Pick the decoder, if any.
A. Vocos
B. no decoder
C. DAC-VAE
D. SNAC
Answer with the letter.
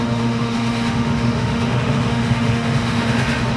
C